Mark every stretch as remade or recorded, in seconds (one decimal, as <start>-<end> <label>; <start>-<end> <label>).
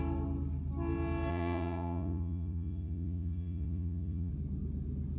0.0-1.3 recorded; 1.3-4.3 remade; 4.3-5.2 recorded